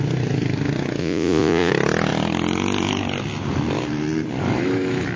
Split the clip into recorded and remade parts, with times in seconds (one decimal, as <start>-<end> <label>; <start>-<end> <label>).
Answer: 0.0-1.0 recorded; 1.0-1.7 remade; 1.7-5.2 recorded